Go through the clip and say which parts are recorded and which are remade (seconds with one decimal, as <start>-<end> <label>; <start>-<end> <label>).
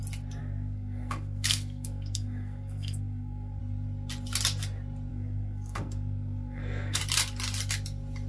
0.0-0.4 recorded; 0.4-3.6 remade; 3.6-5.1 recorded; 5.1-7.0 remade; 7.0-8.3 recorded